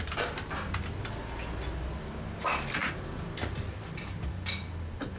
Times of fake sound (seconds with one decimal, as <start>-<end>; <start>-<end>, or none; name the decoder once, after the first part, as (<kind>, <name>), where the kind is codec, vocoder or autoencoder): 2.8-4.3 (vocoder, BigVGAN v2)